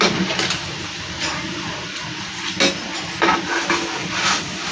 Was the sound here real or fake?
real